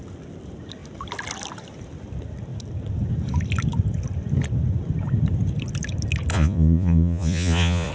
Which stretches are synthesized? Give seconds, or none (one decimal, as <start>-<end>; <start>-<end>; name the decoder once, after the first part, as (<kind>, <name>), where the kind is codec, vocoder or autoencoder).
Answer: 6.3-7.9 (vocoder, Vocos)